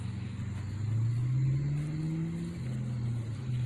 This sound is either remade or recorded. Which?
recorded